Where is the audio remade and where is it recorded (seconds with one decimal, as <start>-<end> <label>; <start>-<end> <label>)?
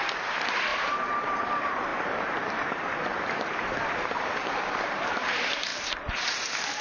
0.0-6.8 remade